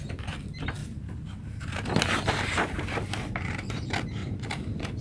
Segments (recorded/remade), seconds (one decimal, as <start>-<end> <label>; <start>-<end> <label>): 0.0-0.8 recorded; 0.8-3.7 remade; 3.7-4.2 recorded; 4.2-5.0 remade